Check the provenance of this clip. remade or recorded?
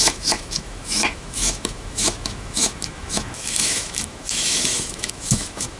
remade